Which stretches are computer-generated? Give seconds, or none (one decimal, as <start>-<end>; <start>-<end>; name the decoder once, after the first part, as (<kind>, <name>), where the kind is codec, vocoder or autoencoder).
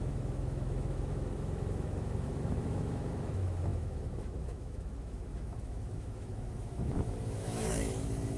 0.0-8.4 (autoencoder, DAC-VAE)